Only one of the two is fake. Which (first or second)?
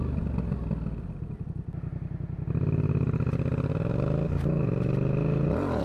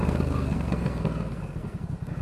second